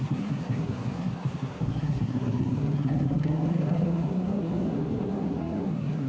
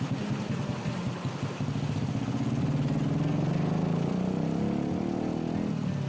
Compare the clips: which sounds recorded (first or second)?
second